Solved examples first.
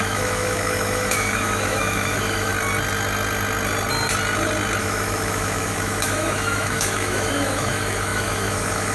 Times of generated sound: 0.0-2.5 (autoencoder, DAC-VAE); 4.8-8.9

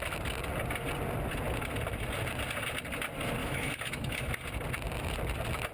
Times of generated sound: 3.4-4.3 (autoencoder, DAC-VAE)

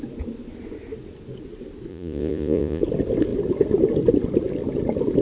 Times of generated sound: 1.9-2.8 (vocoder, Vocos)